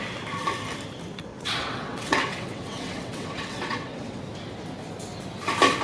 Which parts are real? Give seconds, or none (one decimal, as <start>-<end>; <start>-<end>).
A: 0.0-1.3; 4.2-5.8